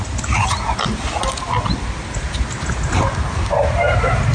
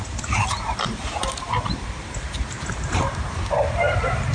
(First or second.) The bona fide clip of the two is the first